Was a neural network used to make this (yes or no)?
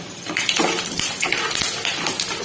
no